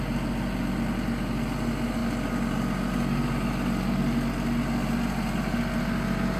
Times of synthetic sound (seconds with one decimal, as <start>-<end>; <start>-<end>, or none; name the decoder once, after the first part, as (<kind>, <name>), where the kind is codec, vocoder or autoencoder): none